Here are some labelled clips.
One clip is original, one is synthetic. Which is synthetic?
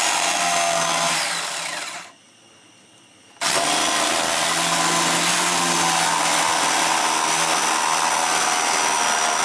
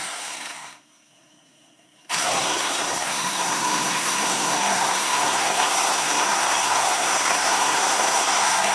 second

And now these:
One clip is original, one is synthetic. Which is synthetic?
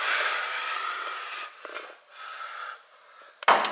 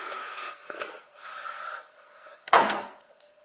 second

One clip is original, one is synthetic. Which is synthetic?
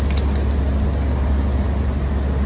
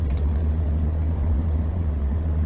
second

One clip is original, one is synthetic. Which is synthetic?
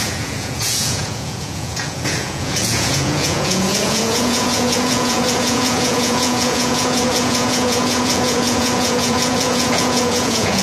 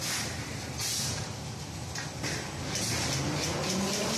first